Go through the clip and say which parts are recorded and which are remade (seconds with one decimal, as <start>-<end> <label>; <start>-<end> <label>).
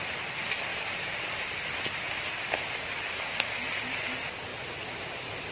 0.0-5.5 recorded